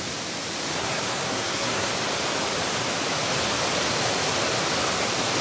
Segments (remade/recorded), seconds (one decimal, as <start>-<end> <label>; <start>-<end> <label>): 0.0-0.8 recorded; 0.8-1.9 remade; 1.9-5.4 recorded